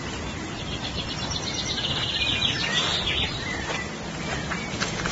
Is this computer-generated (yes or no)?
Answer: yes